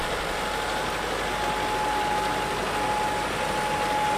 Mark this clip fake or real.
real